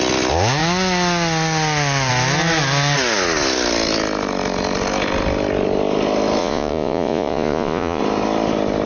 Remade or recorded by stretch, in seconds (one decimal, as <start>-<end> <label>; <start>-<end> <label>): 0.0-6.4 recorded; 6.4-8.0 remade; 8.0-8.9 recorded